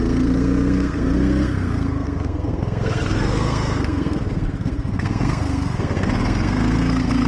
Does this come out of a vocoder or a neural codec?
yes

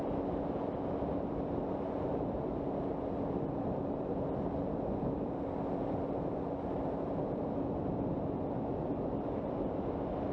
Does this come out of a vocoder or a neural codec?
no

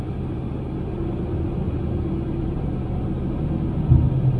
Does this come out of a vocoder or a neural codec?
no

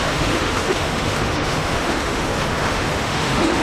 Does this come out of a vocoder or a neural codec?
yes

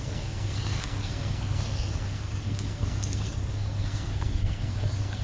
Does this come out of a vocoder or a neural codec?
yes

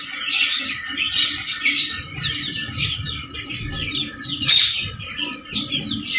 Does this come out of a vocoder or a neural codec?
yes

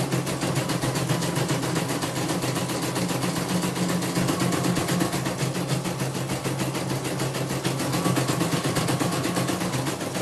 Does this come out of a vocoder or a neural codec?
no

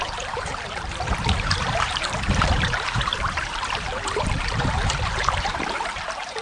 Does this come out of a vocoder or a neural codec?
yes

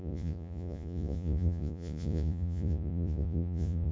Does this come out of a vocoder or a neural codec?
yes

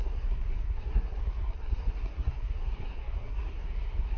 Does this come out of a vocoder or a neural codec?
yes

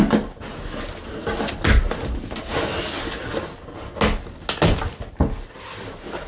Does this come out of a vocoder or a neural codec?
no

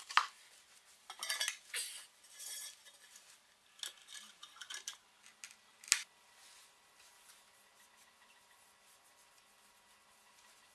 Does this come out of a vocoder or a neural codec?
no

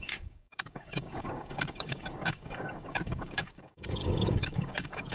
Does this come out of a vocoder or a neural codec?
yes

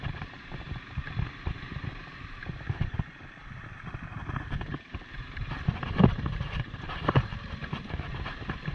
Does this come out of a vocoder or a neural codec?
yes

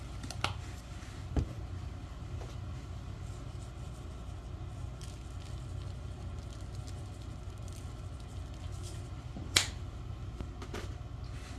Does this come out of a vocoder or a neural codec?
no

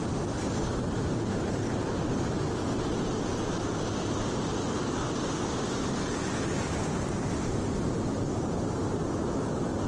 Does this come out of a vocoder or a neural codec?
no